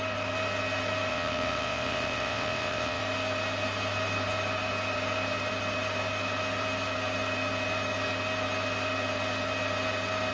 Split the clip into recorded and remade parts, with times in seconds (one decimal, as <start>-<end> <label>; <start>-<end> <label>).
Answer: 0.0-1.1 recorded; 1.1-3.0 remade; 3.0-10.3 recorded